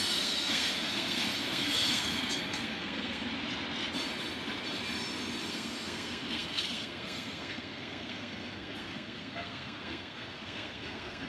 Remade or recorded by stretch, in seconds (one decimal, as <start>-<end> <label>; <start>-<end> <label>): 0.0-3.2 remade; 3.2-5.5 recorded; 5.5-11.3 remade